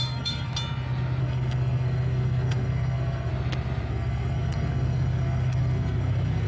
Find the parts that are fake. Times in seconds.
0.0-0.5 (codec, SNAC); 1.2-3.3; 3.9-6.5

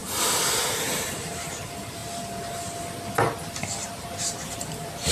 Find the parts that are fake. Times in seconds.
0.6-2.0 (vocoder, BigVGAN v2); 4.2-5.1

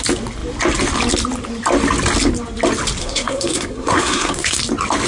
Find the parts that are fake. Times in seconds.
3.0-4.6 (codec, SNAC)

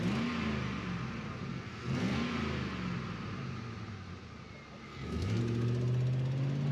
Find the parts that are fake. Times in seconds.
1.5-2.3 (codec, SNAC); 4.9-5.4

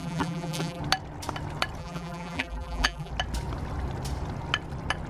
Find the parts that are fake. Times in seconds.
0.0-0.8 (vocoder, BigVGAN v2); 1.8-3.1

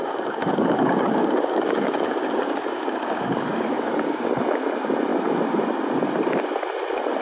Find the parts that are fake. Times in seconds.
0.0-4.3 (codec, DAC)

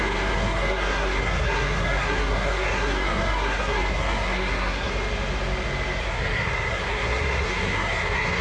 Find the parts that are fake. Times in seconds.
0.0-4.9 (codec, SNAC); 6.0-8.4

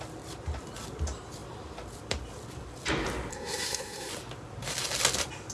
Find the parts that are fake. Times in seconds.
3.3-4.1 (codec, SNAC)